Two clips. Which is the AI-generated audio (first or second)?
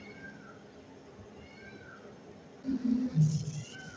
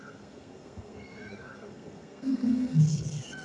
second